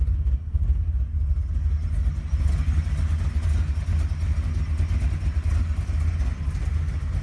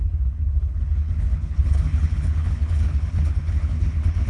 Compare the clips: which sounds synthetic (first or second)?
second